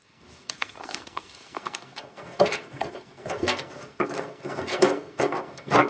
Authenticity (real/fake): fake